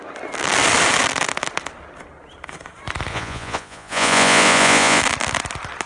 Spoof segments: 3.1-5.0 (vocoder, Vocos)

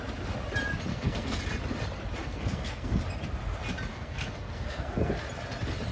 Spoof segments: 0.9-1.4 (codec, SNAC); 2.2-3.0; 3.9-5.1

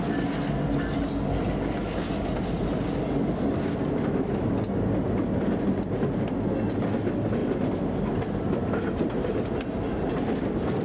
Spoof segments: none

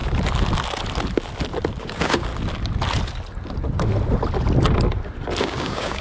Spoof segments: 1.8-2.3 (codec, DAC); 5.4-6.0